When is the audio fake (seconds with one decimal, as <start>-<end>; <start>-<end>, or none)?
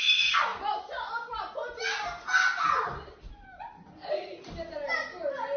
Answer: none